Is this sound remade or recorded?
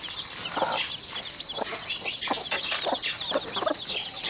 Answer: recorded